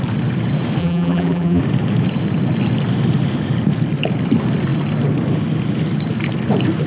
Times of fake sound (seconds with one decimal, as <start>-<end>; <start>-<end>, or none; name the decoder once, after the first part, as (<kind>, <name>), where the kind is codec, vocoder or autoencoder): 0.8-1.6 (vocoder, BigVGAN v2)